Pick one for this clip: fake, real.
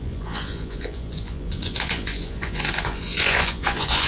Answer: fake